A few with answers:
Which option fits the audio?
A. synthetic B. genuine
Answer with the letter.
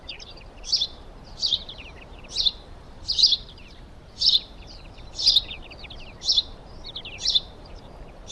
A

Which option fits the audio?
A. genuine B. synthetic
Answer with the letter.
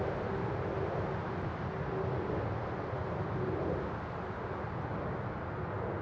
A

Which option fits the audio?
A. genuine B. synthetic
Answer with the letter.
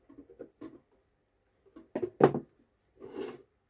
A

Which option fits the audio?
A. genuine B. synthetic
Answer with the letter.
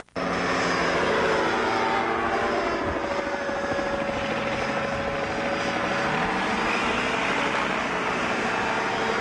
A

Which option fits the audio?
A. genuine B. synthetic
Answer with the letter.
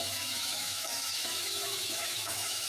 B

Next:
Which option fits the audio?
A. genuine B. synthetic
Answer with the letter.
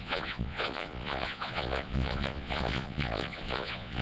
B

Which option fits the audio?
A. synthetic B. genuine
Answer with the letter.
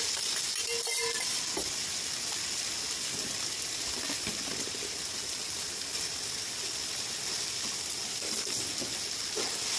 B